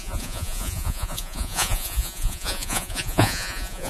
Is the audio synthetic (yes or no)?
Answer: yes